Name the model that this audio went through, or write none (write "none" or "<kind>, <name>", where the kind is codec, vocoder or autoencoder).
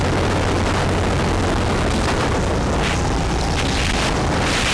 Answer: none